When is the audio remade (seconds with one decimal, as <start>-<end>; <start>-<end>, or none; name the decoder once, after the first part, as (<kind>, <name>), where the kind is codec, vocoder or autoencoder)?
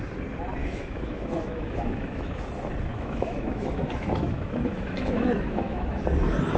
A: 0.6-2.4 (autoencoder, DAC-VAE); 2.9-6.0